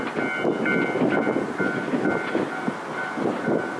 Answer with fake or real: real